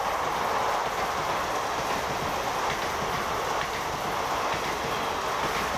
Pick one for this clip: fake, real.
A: real